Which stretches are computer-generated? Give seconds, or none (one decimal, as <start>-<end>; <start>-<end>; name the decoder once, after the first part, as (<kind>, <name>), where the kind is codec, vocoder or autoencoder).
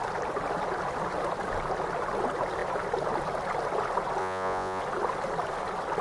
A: 4.2-4.8 (vocoder, Vocos)